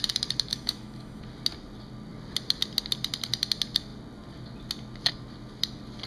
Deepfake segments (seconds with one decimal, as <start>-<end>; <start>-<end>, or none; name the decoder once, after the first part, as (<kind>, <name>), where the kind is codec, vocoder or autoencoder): 0.5-1.2 (autoencoder, DAC-VAE)